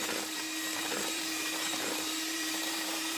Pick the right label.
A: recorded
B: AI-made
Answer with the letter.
B